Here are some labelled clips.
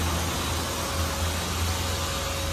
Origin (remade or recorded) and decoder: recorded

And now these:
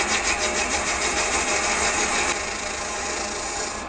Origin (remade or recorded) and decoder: recorded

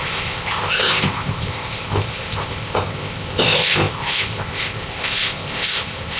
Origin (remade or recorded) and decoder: remade, codec, ZipCodec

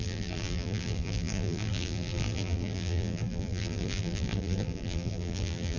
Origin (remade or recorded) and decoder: remade, vocoder, BigVGAN v2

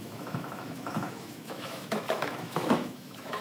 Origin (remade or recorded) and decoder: remade, autoencoder, DAC-VAE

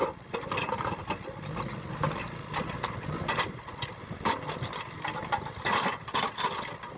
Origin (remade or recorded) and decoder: recorded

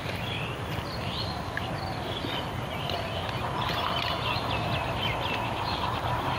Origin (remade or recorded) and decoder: recorded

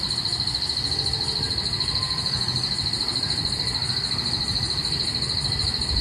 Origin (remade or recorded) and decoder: recorded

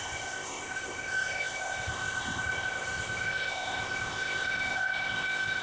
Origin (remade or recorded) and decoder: remade, codec, ZipCodec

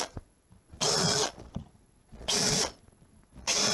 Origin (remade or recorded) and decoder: remade, vocoder, Vocos